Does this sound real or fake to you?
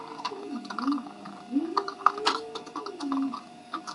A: fake